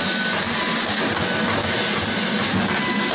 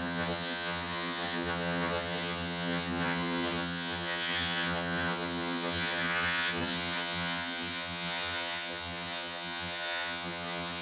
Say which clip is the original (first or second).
first